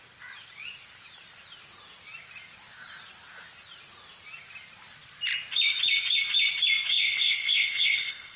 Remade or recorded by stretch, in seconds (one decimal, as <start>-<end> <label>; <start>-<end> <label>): 0.0-6.9 recorded; 6.9-8.4 remade